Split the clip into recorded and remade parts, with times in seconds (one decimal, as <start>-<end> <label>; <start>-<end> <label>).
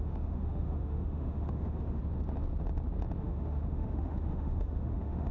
0.0-2.0 remade; 2.0-3.2 recorded; 3.2-5.3 remade